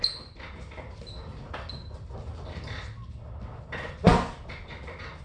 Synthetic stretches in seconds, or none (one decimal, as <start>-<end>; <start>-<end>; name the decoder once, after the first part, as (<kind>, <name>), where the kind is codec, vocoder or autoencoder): none